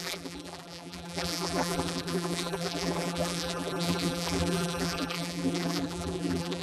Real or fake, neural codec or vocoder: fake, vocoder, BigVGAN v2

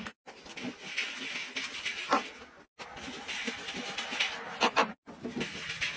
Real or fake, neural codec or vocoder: real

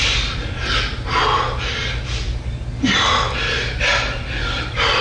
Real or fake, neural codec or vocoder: real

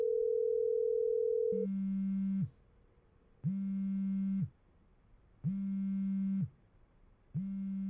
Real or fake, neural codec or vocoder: real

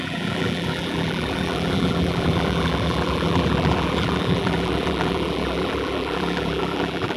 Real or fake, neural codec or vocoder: fake, vocoder, BigVGAN v2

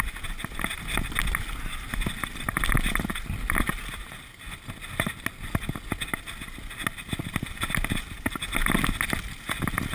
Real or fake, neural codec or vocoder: real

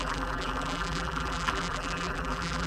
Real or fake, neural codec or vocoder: fake, vocoder, BigVGAN v2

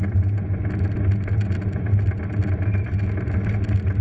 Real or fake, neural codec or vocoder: real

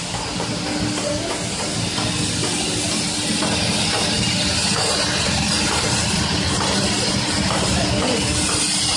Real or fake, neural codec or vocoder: real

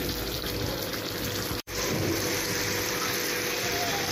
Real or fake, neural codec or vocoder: fake, vocoder, BigVGAN v2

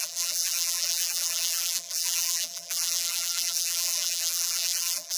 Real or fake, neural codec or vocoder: fake, vocoder, BigVGAN v2